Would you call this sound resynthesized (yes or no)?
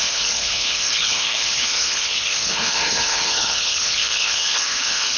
yes